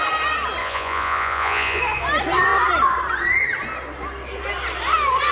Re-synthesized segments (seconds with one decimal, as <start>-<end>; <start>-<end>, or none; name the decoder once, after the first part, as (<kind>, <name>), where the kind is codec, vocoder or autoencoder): 0.6-1.8 (vocoder, Vocos)